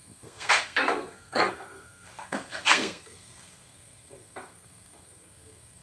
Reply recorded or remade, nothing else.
remade